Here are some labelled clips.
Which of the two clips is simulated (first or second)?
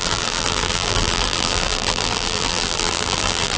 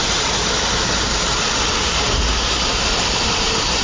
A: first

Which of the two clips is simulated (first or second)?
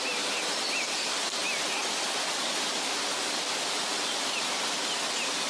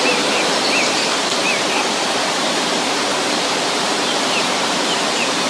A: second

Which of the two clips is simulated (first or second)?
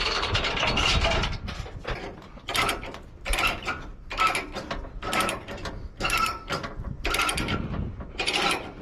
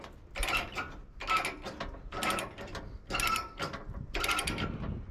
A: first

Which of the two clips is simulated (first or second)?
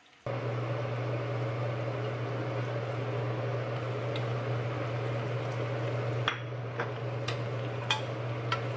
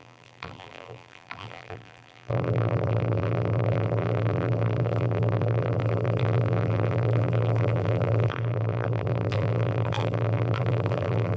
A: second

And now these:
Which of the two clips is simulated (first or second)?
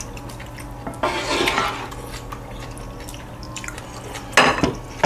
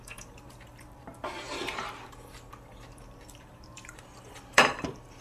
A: second